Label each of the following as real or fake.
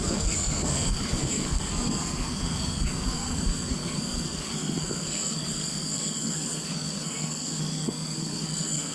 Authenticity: fake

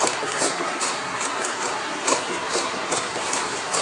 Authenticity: fake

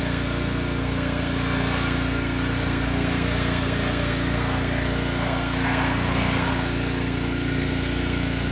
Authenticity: fake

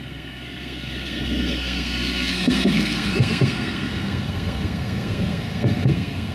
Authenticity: fake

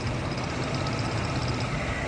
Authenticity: real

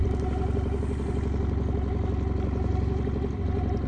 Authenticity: real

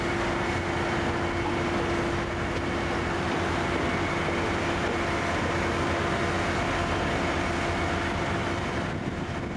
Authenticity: real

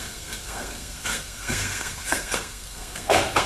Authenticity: fake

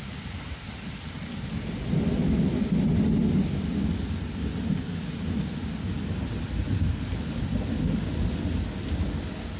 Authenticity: real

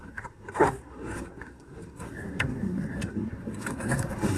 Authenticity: fake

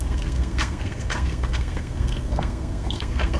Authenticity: fake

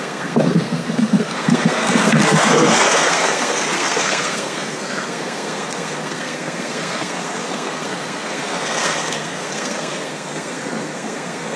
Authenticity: fake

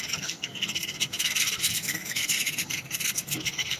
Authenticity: fake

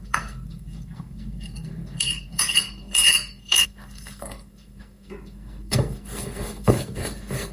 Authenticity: fake